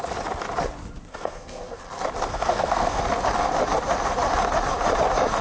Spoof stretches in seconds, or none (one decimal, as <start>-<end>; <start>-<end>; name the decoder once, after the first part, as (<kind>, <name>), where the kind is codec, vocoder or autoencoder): 1.1-1.8 (codec, SNAC); 2.3-3.0

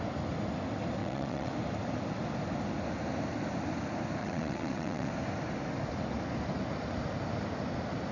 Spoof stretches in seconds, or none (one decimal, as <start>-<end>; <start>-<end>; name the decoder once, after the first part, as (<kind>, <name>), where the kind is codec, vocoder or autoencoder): 1.0-1.5 (vocoder, WaveNeXt); 4.2-5.1

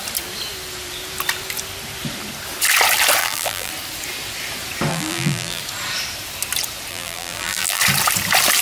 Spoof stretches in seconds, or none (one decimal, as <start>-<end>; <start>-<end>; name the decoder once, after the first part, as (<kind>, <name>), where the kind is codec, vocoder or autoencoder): 3.2-3.7 (vocoder, BigVGAN v2); 4.9-5.6; 6.9-7.8